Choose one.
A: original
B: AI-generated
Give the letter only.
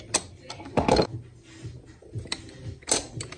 A